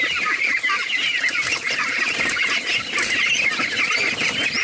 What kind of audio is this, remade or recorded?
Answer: recorded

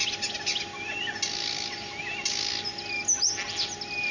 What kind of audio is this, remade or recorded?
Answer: recorded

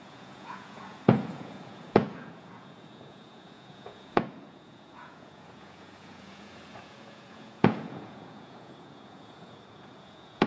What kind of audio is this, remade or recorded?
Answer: remade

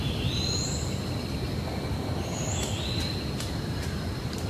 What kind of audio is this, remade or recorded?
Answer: recorded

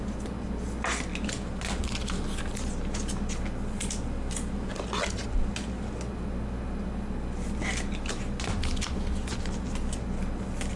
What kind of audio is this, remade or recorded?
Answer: recorded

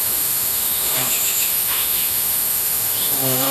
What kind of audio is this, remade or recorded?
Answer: remade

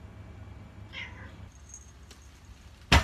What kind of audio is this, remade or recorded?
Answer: recorded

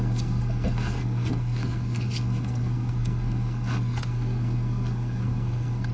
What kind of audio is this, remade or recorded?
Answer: remade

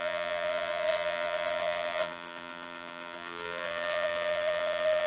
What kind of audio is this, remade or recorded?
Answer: remade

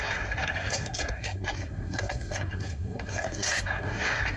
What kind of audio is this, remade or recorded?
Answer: remade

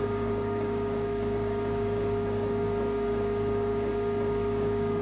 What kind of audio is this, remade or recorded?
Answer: remade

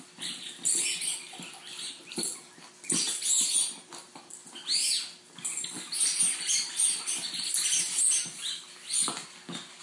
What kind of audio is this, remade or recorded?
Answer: recorded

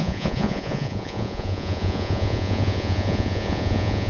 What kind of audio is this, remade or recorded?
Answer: remade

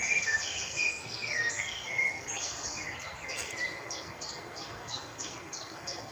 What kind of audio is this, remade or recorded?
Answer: remade